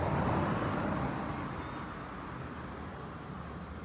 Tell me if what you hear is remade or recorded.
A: recorded